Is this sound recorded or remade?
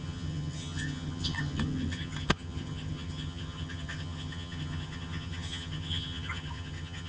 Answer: remade